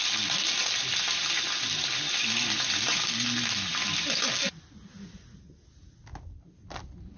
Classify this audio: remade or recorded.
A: recorded